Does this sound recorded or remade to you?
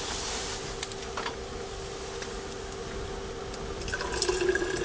recorded